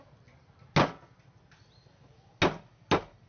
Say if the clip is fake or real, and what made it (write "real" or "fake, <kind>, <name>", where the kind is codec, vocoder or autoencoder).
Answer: real